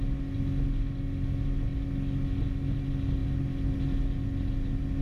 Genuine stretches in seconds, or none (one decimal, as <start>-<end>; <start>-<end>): 0.0-5.0